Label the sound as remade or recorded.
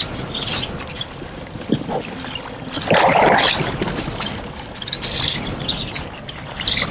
recorded